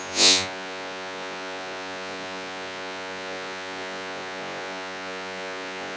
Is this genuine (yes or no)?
no